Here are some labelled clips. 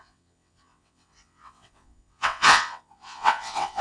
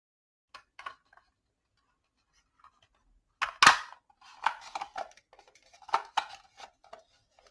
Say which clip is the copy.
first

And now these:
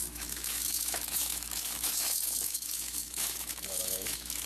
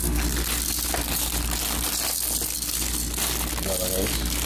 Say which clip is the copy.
first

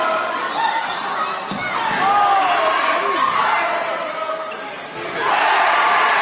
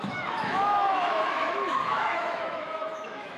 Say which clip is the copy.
second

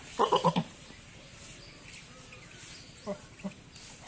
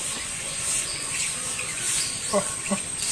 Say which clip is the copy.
second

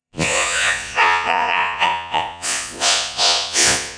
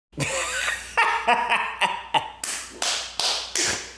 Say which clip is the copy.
first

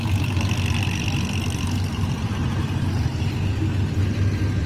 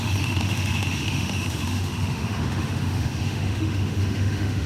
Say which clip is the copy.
second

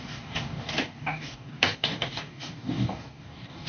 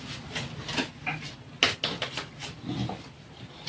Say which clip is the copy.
first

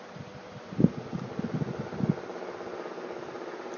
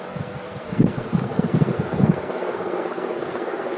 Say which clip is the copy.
second